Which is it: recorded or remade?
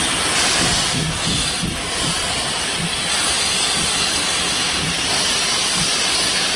recorded